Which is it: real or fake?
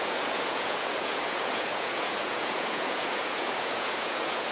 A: fake